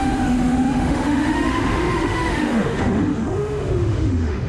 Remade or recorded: remade